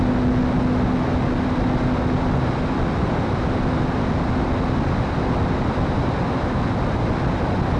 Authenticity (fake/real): real